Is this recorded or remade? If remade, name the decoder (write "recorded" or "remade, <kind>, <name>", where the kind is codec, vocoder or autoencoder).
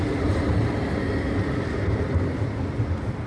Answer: recorded